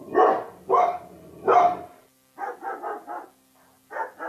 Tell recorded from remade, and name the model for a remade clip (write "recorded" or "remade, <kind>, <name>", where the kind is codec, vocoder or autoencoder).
recorded